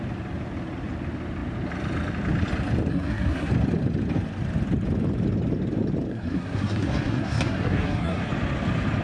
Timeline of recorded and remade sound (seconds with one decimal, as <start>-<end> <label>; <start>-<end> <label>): 0.0-2.9 recorded; 2.9-3.5 remade; 3.5-6.1 recorded; 6.1-8.3 remade; 8.3-9.0 recorded